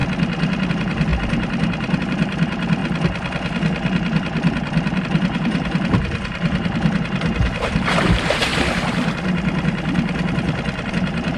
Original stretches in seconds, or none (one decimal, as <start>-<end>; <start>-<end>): 0.0-0.7; 2.8-5.0; 8.5-10.9